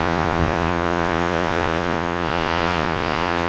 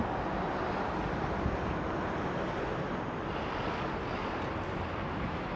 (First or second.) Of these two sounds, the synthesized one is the first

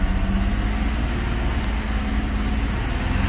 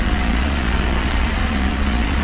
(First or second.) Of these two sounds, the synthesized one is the second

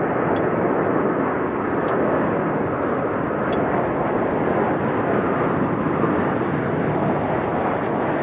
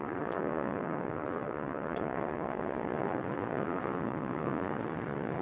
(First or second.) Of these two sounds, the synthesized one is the second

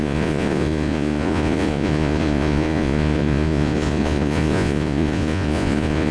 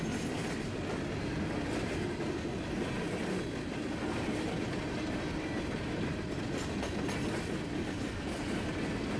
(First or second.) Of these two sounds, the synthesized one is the first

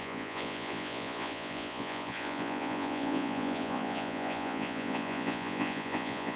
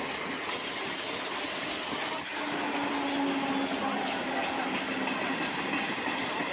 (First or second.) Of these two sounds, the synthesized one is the first